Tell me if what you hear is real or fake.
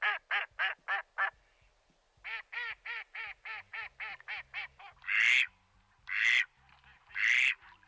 real